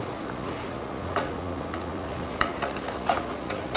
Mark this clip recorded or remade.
remade